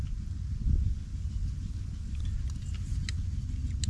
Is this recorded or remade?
recorded